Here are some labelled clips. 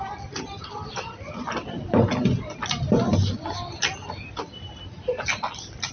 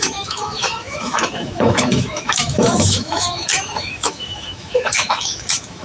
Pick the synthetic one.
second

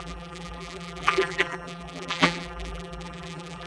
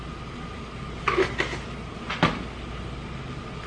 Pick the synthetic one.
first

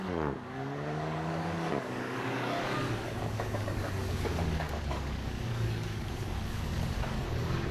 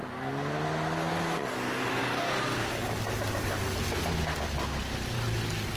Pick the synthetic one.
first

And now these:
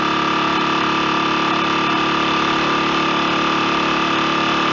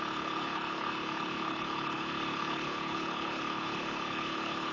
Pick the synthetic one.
second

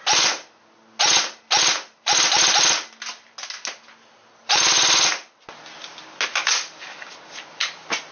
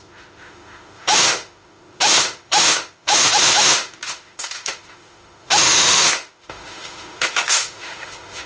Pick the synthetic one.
second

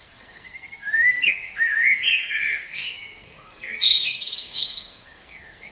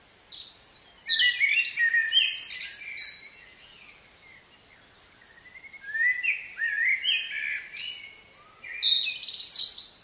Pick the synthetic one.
first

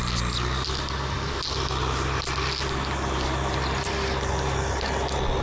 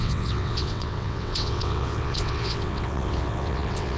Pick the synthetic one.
second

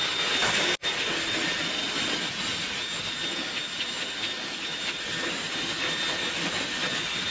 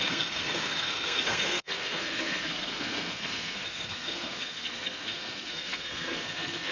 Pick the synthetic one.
second